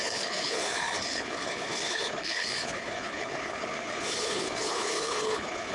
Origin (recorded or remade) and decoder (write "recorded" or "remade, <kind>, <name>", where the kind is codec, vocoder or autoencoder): remade, codec, HILCodec